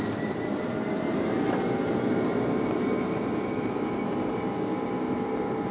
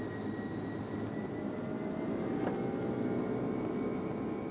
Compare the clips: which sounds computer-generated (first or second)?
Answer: first